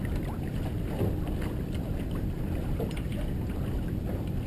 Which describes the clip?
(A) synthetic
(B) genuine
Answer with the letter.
B